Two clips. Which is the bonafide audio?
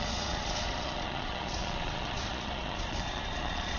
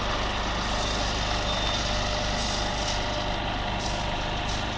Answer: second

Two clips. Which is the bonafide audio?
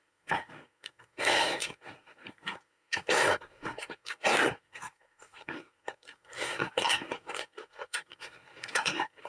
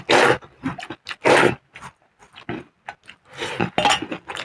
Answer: second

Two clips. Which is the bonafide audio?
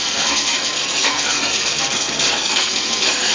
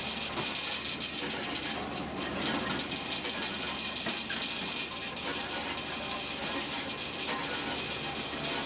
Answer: second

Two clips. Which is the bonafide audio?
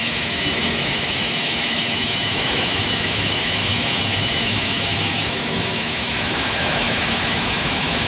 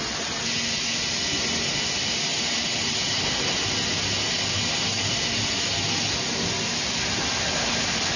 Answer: second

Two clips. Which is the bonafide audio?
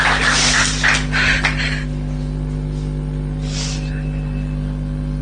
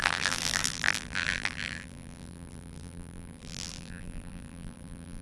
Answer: first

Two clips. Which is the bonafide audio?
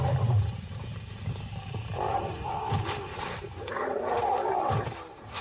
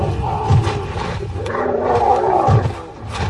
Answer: second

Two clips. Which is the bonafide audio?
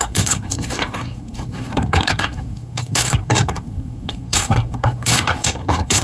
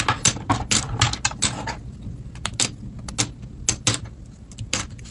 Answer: second